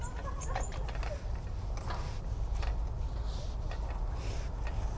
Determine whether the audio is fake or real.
real